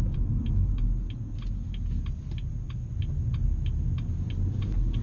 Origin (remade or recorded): recorded